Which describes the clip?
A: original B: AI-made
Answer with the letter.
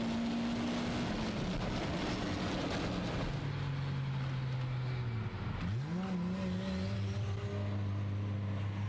A